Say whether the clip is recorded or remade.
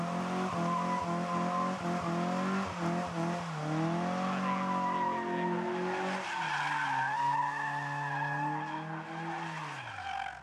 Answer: recorded